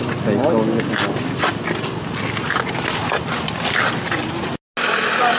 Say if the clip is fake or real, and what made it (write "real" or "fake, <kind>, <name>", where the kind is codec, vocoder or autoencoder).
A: real